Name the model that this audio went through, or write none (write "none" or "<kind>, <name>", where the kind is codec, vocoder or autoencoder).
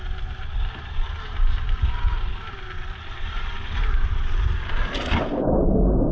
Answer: none